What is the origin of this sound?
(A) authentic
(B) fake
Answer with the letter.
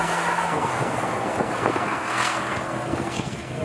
B